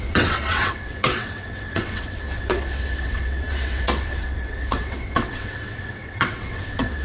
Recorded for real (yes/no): no